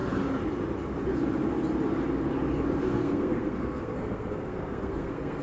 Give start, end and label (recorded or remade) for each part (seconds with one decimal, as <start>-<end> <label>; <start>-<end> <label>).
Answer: 0.0-2.8 recorded; 2.8-5.4 remade